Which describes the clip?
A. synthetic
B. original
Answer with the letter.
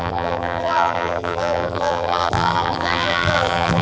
A